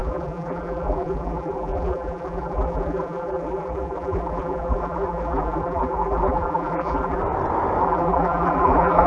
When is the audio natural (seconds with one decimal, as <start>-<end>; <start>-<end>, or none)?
7.2-7.8